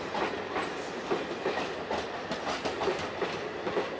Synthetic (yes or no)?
no